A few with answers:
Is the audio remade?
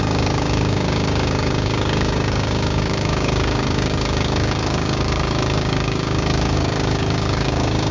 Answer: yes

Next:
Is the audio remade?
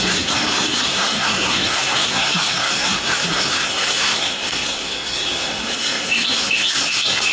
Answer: yes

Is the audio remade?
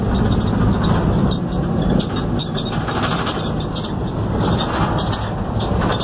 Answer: no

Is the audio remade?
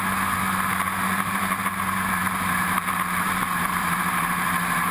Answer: yes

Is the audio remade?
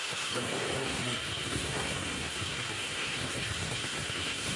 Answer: yes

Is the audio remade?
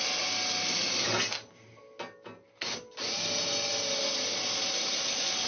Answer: no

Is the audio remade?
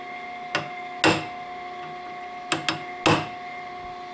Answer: no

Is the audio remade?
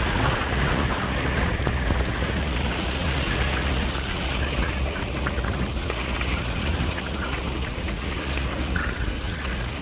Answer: yes